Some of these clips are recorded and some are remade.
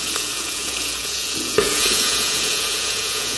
remade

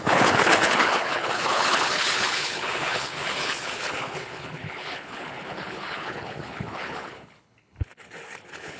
remade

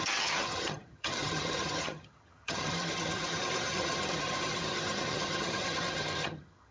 remade